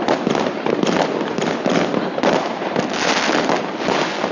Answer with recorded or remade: recorded